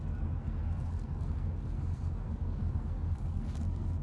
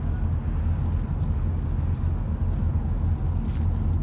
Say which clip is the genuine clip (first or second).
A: second